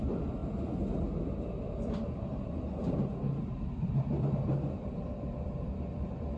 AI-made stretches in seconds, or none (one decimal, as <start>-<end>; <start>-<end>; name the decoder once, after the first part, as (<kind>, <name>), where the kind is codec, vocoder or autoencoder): 0.0-0.4 (vocoder, BigVGAN v2); 4.2-6.4